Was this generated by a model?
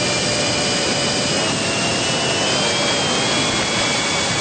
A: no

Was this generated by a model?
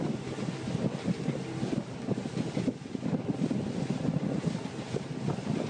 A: no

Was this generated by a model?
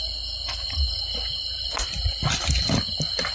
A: no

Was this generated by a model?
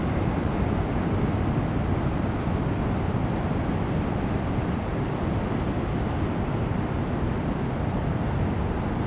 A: no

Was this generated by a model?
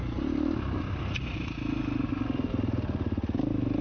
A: no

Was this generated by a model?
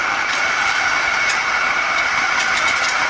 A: yes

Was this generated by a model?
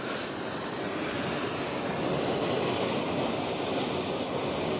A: no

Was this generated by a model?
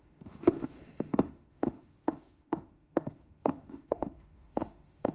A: yes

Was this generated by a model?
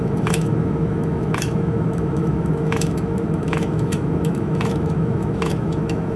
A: yes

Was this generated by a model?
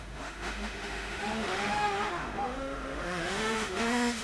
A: yes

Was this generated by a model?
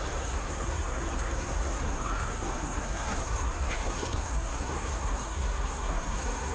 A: yes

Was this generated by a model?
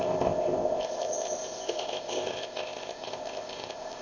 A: yes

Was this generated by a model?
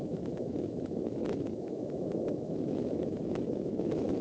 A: yes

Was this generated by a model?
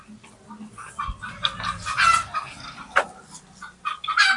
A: no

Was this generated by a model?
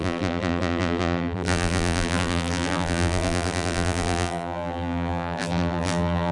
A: yes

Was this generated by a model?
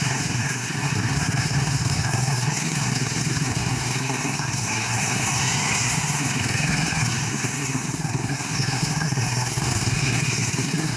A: yes